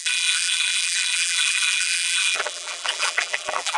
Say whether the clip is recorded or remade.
remade